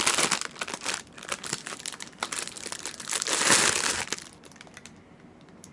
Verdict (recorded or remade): recorded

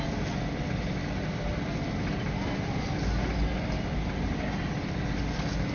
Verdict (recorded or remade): recorded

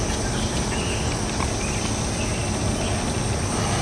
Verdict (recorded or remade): recorded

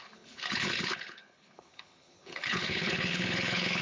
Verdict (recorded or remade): remade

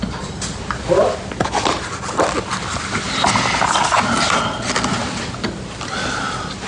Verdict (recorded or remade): recorded